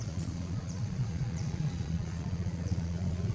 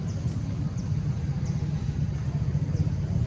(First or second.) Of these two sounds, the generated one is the first